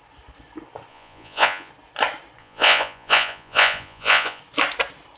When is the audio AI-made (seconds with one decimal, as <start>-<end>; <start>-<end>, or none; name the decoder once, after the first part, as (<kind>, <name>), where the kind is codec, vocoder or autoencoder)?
0.9-1.7 (vocoder, Vocos); 2.4-4.4